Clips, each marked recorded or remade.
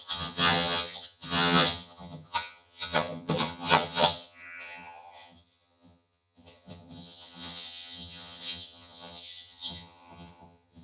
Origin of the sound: remade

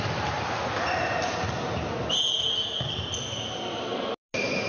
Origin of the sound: recorded